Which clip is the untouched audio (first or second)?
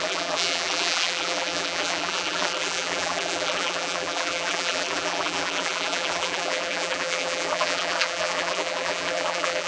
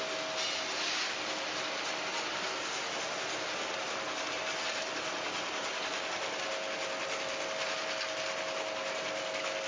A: second